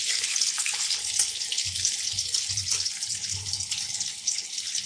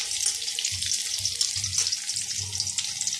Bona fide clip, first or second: second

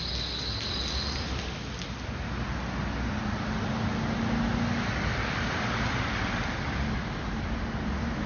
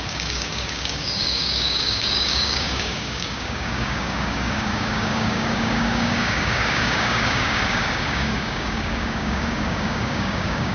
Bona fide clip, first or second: first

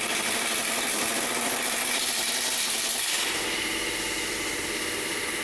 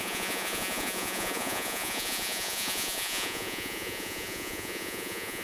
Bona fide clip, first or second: first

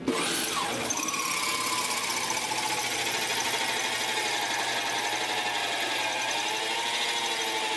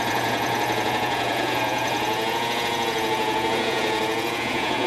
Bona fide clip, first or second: first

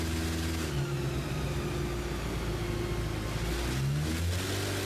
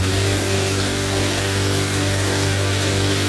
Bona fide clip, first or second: first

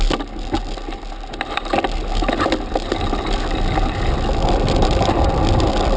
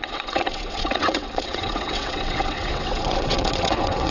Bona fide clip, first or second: first